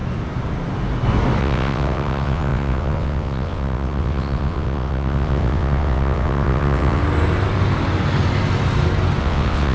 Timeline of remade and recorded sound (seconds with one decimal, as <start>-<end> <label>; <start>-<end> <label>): 0.0-1.4 recorded; 1.4-7.0 remade; 7.0-9.2 recorded; 9.2-9.7 remade